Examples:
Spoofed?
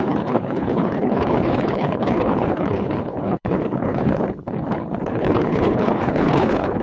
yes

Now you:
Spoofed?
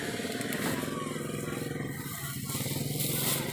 no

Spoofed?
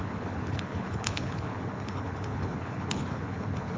yes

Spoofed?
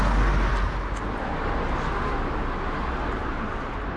no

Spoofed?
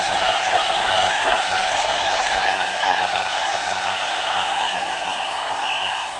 yes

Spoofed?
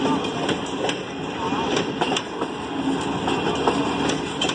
no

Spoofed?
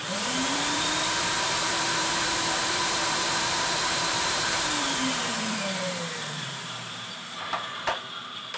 yes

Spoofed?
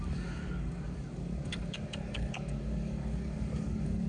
yes